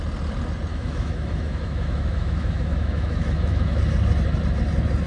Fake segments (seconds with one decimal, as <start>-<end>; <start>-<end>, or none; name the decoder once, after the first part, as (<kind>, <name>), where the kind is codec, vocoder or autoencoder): 0.7-3.8 (autoencoder, DAC-VAE)